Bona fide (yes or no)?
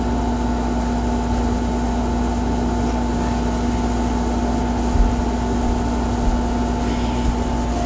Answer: yes